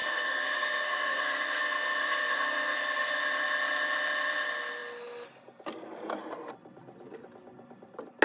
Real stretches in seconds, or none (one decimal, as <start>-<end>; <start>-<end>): 3.2-8.2